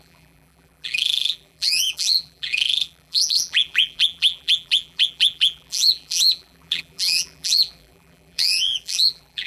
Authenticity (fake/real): fake